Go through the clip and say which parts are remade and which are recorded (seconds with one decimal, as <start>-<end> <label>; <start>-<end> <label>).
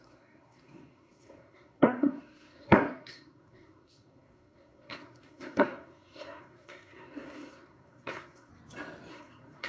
0.0-8.5 remade; 8.5-9.1 recorded; 9.1-9.7 remade